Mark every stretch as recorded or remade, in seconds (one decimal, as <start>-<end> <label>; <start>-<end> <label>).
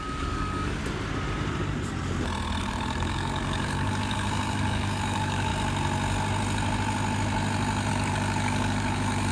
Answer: 0.0-0.8 remade; 0.8-2.6 recorded; 2.6-5.5 remade; 5.5-7.9 recorded; 7.9-9.3 remade